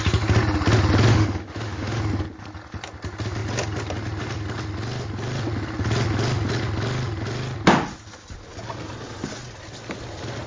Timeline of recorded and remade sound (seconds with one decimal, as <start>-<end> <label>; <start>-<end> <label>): 0.0-1.1 recorded; 1.1-2.0 remade; 2.0-10.5 recorded